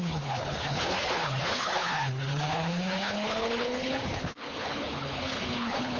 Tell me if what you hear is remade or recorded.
remade